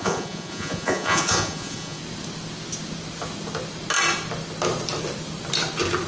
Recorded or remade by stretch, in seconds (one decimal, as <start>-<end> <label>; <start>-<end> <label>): 0.0-2.0 remade; 2.0-6.1 recorded